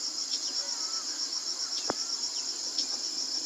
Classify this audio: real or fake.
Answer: real